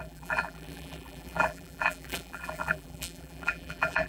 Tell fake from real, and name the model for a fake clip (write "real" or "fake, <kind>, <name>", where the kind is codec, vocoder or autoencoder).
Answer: fake, vocoder, BigVGAN v2